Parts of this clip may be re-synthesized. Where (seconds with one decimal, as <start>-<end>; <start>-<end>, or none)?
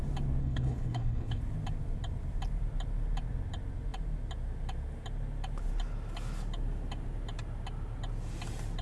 0.4-1.4